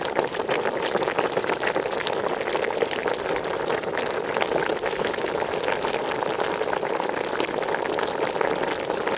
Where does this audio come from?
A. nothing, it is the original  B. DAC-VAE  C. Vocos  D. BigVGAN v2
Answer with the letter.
A